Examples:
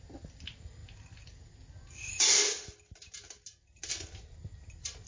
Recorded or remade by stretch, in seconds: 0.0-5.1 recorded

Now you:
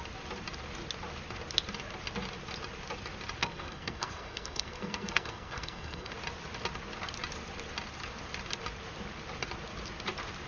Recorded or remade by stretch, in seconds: 0.0-3.4 recorded; 3.4-6.1 remade; 6.1-10.5 recorded

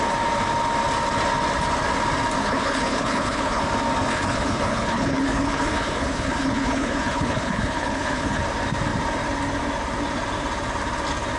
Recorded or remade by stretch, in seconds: 0.0-2.4 recorded; 2.4-3.6 remade; 3.6-4.1 recorded; 4.1-8.4 remade; 8.4-11.4 recorded

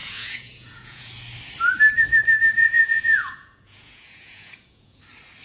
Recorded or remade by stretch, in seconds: 0.0-1.1 remade; 1.1-2.6 recorded; 2.6-5.0 remade; 5.0-5.4 recorded

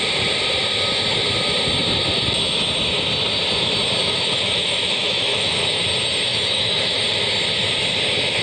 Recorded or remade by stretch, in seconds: 0.0-4.0 recorded; 4.0-5.8 remade; 5.8-6.3 recorded; 6.3-7.0 remade; 7.0-8.4 recorded